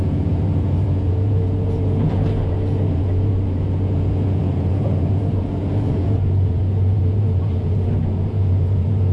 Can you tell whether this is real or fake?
fake